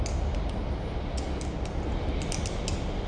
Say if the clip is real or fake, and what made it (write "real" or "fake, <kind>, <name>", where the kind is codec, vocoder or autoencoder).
real